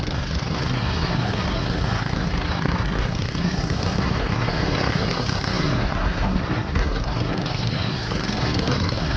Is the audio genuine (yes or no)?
no